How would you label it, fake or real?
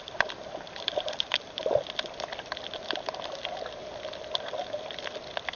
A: real